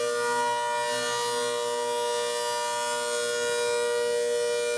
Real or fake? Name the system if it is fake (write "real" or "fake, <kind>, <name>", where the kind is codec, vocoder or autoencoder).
real